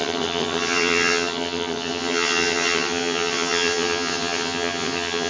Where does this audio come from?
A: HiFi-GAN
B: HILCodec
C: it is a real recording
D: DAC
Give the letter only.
A